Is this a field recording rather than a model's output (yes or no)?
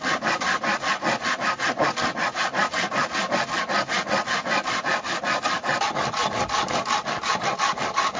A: yes